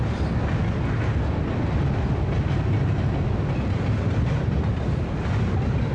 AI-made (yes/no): no